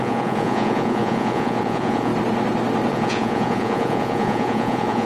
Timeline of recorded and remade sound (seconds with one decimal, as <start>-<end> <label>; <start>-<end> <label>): 0.0-2.1 remade; 2.1-2.9 recorded; 2.9-5.1 remade

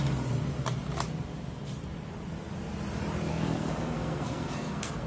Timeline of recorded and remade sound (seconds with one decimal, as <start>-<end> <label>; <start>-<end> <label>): 0.0-3.3 recorded; 3.3-5.1 remade

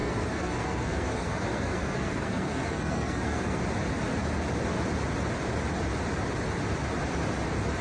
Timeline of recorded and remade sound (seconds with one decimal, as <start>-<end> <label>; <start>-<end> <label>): 0.0-3.6 remade; 3.6-7.8 recorded

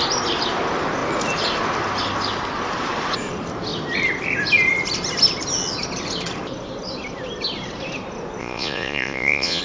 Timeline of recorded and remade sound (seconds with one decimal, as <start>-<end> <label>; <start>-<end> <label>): 0.0-8.4 recorded; 8.4-9.6 remade

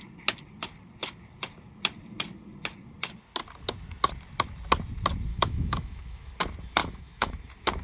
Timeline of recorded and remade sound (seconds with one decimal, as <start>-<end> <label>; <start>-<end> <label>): 0.0-5.3 recorded; 5.3-6.3 remade; 6.3-6.8 recorded; 6.8-7.3 remade; 7.3-7.8 recorded

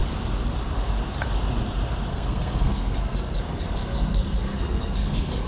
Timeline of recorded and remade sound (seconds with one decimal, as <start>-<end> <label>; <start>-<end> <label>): 0.0-2.1 recorded; 2.1-5.5 remade

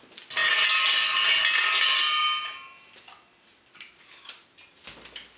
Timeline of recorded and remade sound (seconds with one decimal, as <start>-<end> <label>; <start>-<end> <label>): 0.0-5.4 recorded

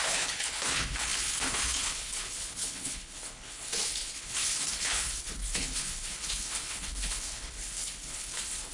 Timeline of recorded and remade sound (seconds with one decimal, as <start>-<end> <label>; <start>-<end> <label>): 0.0-8.7 remade